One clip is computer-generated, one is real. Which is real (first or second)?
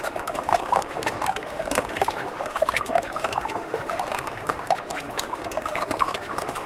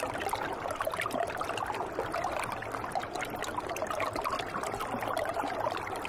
second